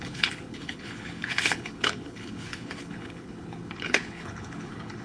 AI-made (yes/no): yes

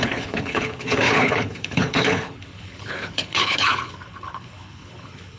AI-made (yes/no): yes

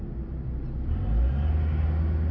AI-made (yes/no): no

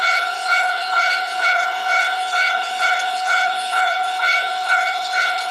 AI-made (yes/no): yes